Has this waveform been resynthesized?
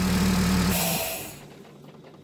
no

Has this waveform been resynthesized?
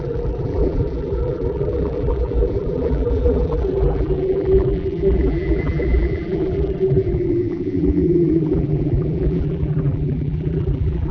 yes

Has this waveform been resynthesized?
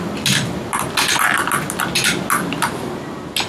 no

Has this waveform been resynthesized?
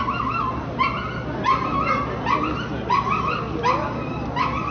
no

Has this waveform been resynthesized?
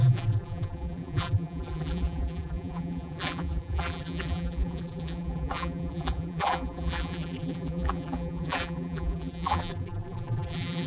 yes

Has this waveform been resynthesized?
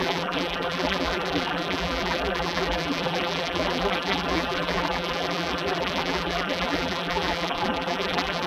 yes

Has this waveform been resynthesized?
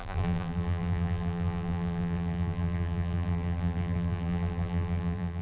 yes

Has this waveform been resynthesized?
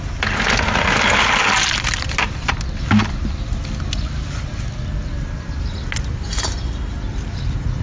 no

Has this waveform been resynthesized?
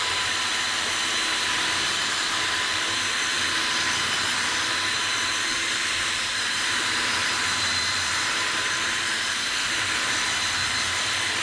yes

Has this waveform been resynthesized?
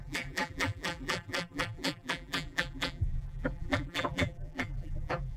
yes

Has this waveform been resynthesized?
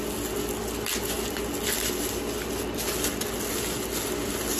no